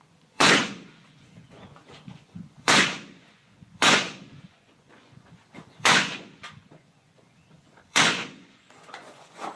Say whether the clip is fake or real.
fake